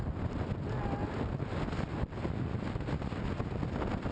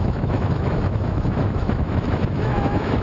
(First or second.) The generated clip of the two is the second